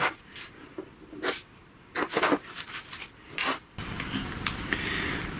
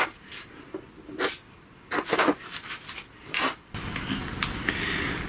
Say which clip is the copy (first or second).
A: first